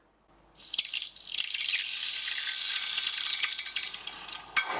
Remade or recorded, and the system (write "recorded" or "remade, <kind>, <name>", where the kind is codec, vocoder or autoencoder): recorded